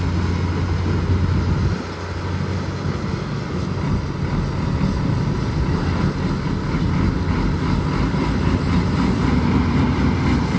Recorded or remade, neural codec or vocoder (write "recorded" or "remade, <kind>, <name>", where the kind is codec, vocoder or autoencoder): recorded